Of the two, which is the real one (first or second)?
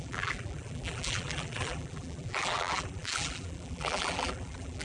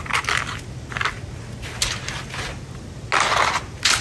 second